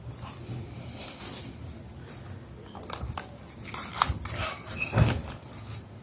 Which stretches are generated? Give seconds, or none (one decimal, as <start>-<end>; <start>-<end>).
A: none